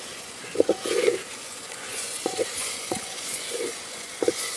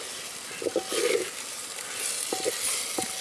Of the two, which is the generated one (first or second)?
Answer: first